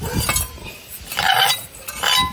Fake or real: real